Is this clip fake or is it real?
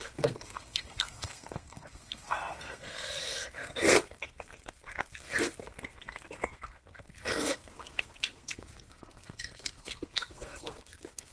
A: fake